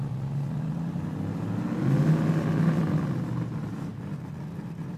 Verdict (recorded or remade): recorded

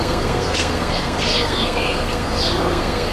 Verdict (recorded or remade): remade